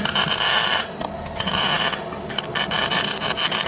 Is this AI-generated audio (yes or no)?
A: no